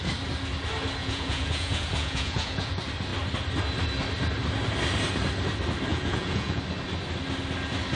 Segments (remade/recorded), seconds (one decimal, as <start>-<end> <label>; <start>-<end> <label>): 0.0-1.0 recorded; 1.0-2.7 remade; 2.7-5.9 recorded; 5.9-6.6 remade; 6.6-8.0 recorded